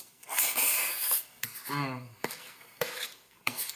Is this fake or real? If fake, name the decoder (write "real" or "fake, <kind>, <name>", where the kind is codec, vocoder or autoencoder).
fake, codec, SNAC